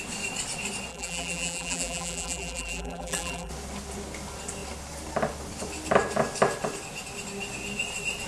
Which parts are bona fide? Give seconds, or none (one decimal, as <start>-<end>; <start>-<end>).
0.0-0.9; 3.5-8.3